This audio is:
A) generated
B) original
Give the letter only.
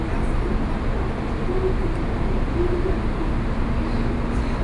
B